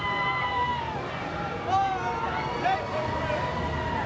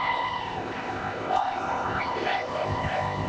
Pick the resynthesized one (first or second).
second